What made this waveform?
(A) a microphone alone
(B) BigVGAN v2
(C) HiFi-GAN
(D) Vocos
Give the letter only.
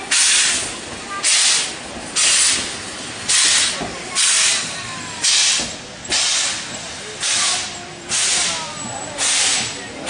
A